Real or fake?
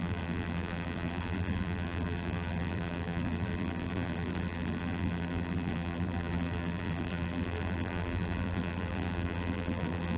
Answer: fake